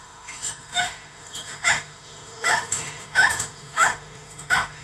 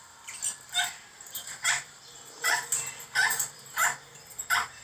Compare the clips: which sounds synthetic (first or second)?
first